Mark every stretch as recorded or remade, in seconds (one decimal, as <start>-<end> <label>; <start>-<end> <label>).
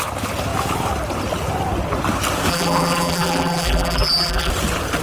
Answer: 0.0-2.5 recorded; 2.5-4.5 remade; 4.5-5.0 recorded